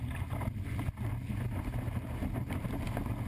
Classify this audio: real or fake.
real